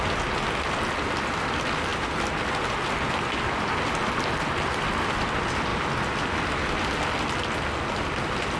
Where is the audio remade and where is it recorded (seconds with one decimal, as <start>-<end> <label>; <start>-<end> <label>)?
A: 0.0-8.6 recorded